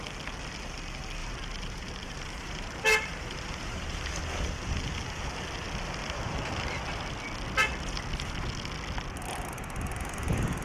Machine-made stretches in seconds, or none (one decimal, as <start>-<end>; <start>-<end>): 1.2-4.2; 6.0-6.7